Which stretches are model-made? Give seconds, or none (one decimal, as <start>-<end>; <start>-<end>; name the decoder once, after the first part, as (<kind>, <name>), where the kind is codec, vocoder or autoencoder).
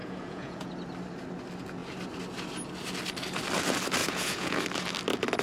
0.0-0.7 (vocoder, Vocos); 4.0-4.6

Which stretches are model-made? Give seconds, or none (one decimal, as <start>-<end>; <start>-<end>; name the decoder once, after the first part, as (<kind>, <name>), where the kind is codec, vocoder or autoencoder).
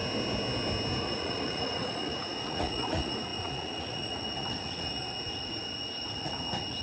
1.0-6.8 (vocoder, Vocos)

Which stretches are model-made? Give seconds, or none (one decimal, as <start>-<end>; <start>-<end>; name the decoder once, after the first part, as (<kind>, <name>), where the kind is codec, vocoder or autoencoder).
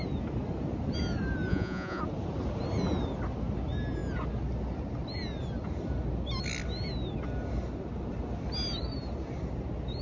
1.5-2.0 (vocoder, Vocos)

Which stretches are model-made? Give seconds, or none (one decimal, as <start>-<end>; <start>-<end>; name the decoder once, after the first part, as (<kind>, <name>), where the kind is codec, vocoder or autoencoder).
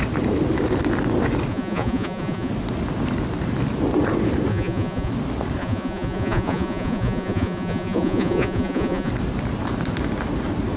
1.5-2.5 (vocoder, Vocos); 4.5-5.1; 5.6-9.1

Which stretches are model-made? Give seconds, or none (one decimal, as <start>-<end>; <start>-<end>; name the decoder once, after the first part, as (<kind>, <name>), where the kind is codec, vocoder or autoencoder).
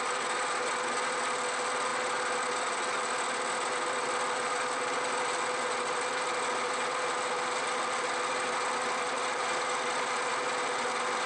none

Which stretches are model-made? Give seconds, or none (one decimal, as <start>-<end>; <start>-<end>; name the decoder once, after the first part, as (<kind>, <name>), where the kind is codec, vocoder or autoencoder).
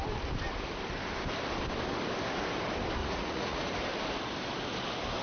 3.0-3.6 (vocoder, Vocos)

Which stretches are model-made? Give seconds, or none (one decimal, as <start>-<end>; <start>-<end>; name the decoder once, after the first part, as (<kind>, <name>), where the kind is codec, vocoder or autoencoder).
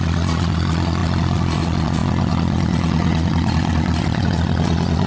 0.0-5.1 (vocoder, Vocos)